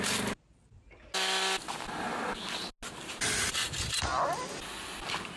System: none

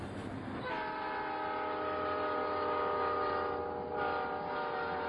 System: none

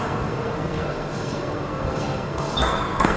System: codec, SNAC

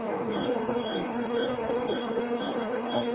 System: codec, SNAC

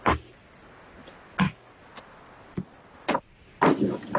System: none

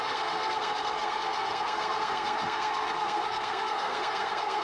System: codec, SNAC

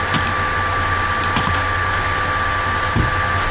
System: none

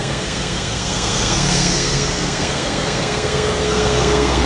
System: codec, SNAC